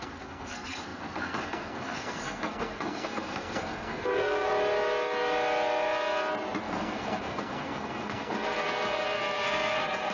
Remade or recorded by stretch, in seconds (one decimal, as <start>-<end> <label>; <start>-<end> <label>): 0.0-4.5 remade; 4.5-6.6 recorded; 6.6-10.1 remade